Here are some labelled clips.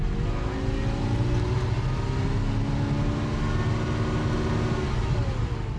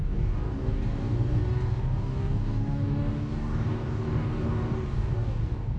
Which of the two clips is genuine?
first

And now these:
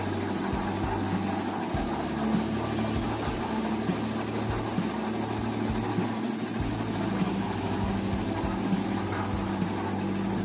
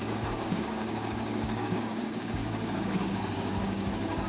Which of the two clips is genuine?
first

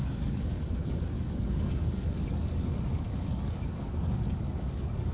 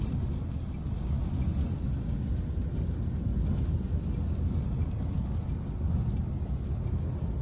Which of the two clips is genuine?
second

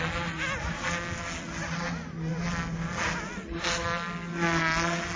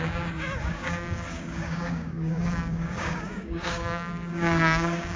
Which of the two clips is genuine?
first